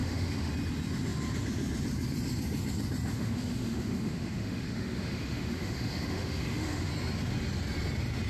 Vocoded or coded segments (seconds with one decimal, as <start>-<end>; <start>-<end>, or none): 0.0-0.5; 3.1-6.9